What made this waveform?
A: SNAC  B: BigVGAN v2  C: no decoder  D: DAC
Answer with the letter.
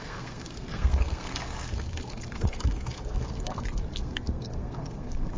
A